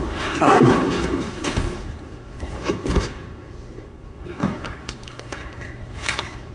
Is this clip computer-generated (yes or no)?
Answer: yes